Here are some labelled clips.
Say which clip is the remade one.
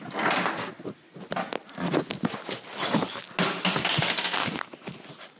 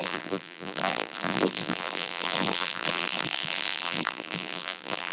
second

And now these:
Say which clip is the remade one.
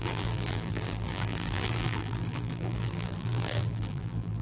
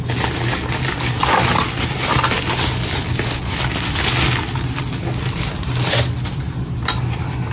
first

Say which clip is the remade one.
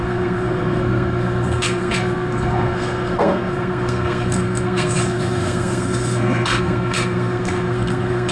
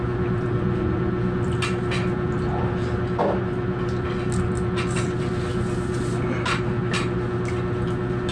first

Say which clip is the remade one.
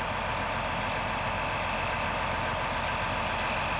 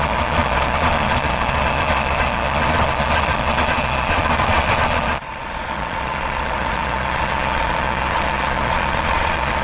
second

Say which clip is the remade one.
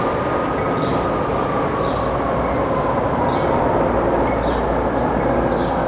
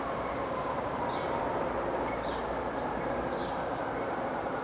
second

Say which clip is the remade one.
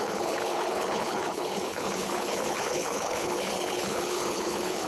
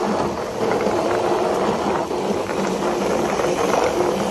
first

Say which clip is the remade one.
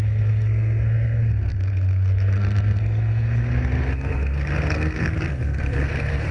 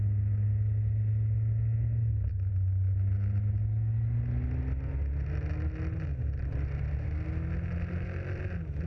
first